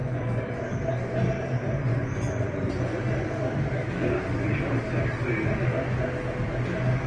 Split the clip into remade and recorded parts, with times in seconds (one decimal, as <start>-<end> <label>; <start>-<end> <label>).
0.0-0.6 remade; 0.6-1.8 recorded; 1.8-2.7 remade; 2.7-7.1 recorded